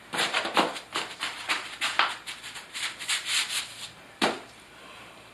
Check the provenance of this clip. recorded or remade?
remade